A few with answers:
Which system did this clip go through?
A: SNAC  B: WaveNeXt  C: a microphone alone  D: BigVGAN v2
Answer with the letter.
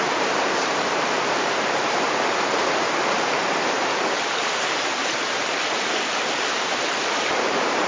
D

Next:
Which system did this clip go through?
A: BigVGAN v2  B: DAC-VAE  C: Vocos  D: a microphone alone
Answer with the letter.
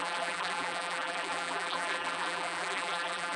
A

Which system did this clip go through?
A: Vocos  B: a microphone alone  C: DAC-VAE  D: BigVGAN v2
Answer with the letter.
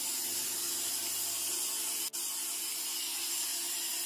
B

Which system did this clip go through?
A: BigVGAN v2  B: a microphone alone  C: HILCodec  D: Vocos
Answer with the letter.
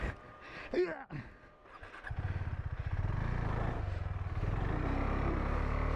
B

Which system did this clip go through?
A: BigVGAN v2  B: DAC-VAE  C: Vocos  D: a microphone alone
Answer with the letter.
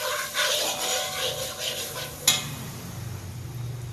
D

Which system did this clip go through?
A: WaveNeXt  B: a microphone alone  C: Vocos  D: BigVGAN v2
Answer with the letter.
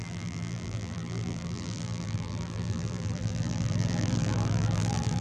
D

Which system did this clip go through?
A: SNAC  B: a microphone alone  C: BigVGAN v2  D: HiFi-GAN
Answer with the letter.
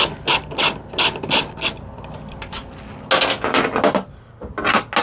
B